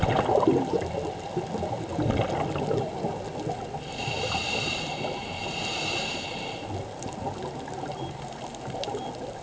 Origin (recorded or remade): recorded